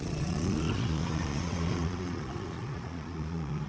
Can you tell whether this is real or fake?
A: fake